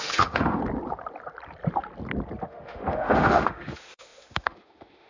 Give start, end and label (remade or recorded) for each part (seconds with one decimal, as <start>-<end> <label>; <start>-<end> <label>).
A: 0.0-0.6 remade; 0.6-2.5 recorded; 2.5-5.1 remade